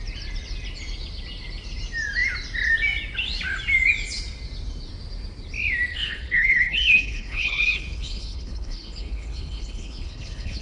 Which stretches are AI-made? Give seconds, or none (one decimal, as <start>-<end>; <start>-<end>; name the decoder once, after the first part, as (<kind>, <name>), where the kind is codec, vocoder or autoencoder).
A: 5.9-10.6 (codec, HILCodec)